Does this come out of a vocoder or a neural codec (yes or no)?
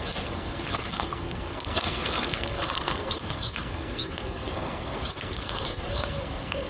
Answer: yes